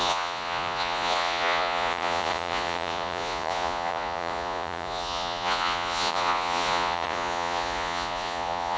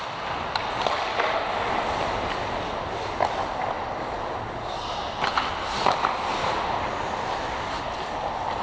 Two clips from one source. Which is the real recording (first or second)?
second